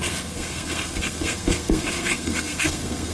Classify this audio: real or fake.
fake